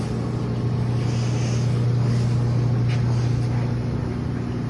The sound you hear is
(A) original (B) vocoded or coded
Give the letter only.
A